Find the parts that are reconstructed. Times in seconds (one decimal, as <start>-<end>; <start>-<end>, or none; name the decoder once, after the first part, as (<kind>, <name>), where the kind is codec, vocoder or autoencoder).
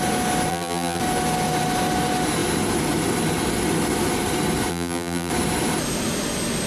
0.5-1.0 (vocoder, BigVGAN v2); 4.7-5.3